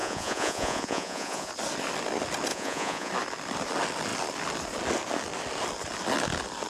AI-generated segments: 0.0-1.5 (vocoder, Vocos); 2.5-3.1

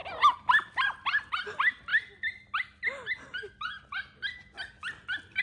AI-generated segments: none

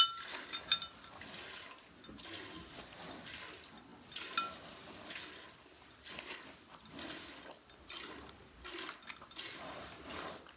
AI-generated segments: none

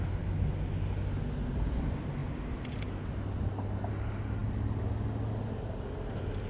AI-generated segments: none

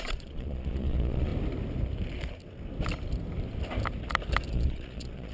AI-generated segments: 0.0-1.3 (vocoder, Vocos); 4.5-5.3

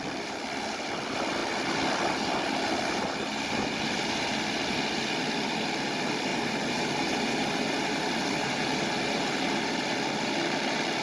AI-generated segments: 0.0-1.4 (vocoder, BigVGAN v2); 3.8-4.3; 5.2-6.3; 10.3-11.0